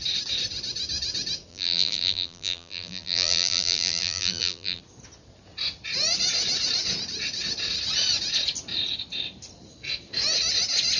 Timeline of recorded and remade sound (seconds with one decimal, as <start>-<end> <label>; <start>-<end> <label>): 0.0-1.5 recorded; 1.5-4.8 remade; 4.8-11.0 recorded